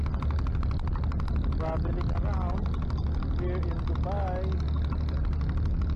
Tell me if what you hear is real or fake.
real